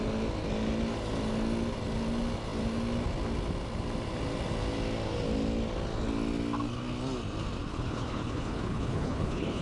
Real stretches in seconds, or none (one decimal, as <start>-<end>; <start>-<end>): 0.0-7.7